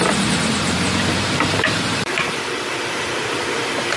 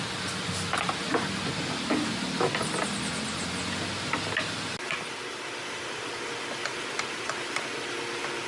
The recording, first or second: second